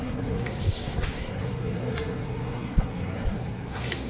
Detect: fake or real fake